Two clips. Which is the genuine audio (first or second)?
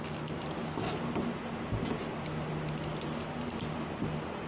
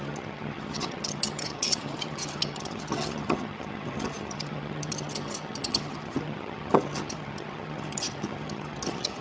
first